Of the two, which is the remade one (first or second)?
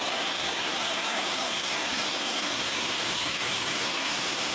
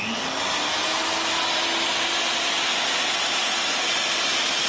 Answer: first